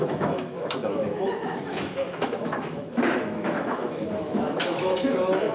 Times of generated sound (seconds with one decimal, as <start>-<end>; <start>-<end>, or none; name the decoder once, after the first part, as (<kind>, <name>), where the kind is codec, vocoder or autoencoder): 0.0-5.5 (autoencoder, DAC-VAE)